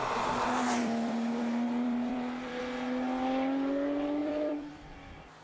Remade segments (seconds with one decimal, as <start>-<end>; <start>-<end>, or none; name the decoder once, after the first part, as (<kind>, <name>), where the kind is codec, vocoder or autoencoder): 0.8-2.6 (vocoder, BigVGAN v2); 4.2-4.7